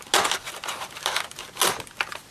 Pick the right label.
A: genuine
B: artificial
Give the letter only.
A